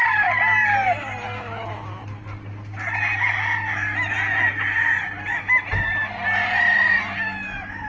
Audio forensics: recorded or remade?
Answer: recorded